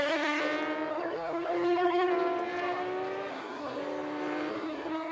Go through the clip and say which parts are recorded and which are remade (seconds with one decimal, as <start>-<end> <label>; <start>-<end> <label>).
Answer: 0.0-0.4 remade; 0.4-0.9 recorded; 0.9-2.1 remade; 2.1-3.3 recorded; 3.3-3.8 remade; 3.8-4.5 recorded; 4.5-5.1 remade